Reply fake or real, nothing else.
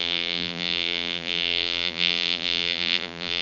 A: fake